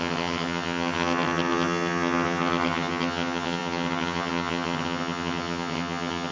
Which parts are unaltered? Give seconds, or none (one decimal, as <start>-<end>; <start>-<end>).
none